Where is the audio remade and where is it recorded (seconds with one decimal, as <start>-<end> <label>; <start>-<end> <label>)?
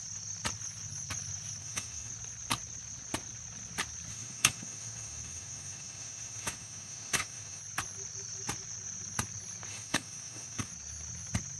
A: 0.0-1.6 recorded; 1.6-2.1 remade; 2.1-4.1 recorded; 4.1-7.6 remade; 7.6-9.7 recorded; 9.7-10.7 remade; 10.7-11.6 recorded